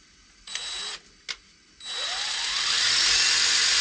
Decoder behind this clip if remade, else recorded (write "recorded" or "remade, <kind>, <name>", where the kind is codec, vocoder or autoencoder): recorded